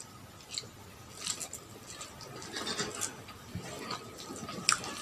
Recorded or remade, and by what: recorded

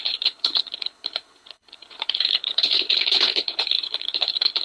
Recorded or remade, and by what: remade, codec, HILCodec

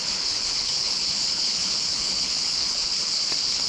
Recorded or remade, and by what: remade, codec, HILCodec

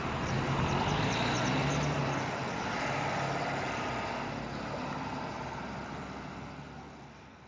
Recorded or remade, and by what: recorded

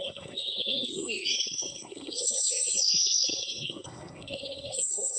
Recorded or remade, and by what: remade, codec, SNAC